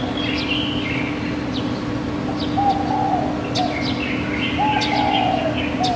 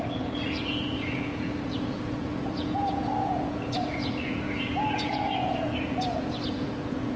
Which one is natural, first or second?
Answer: first